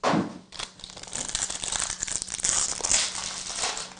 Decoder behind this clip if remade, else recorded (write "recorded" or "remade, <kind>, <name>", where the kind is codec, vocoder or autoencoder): recorded